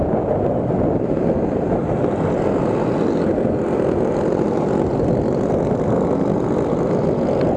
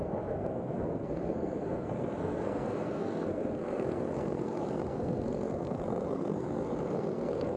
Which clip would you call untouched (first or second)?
first